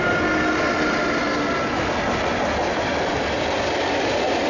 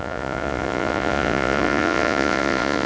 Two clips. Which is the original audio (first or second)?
first